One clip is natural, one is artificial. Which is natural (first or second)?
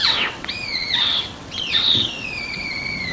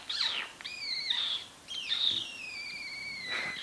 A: second